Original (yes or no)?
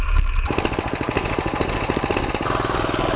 yes